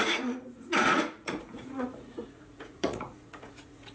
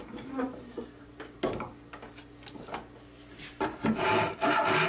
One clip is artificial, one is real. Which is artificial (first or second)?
first